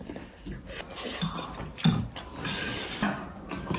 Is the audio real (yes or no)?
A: yes